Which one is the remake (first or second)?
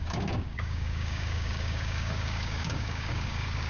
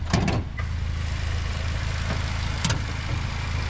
first